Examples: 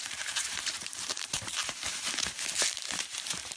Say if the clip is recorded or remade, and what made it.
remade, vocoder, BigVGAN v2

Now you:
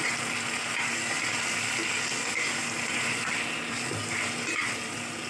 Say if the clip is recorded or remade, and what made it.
recorded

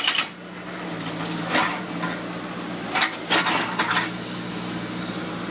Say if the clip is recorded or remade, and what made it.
recorded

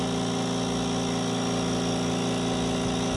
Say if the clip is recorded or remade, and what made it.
recorded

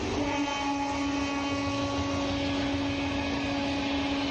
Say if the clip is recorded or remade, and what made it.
recorded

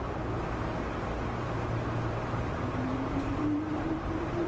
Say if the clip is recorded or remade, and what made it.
remade, vocoder, BigVGAN v2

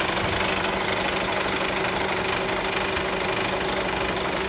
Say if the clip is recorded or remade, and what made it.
recorded